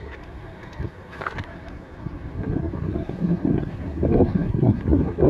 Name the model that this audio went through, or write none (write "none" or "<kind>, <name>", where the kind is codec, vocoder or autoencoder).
codec, SNAC